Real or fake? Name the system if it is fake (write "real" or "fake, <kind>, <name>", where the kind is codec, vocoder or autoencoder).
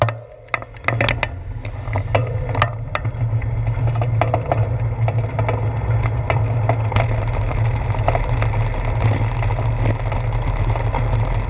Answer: real